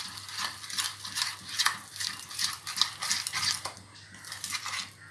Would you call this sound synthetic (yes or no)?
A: no